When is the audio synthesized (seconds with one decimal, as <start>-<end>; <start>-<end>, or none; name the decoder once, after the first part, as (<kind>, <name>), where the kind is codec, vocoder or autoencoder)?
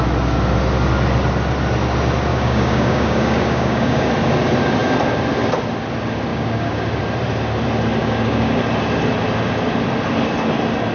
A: 2.3-4.1 (codec, DAC); 6.3-7.0; 8.0-8.6